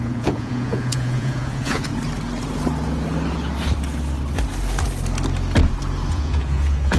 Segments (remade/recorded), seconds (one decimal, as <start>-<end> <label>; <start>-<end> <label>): 0.0-1.9 remade; 1.9-6.1 recorded; 6.1-7.0 remade